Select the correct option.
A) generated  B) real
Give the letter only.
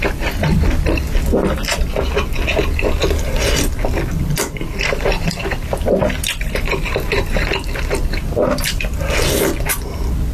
B